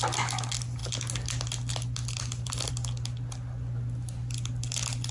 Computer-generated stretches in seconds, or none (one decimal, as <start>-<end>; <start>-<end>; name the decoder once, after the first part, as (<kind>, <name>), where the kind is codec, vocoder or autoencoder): none